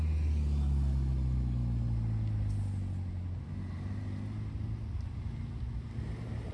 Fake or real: real